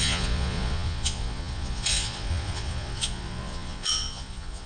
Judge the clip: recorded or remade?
remade